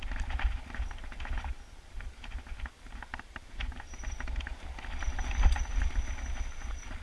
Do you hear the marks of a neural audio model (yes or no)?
no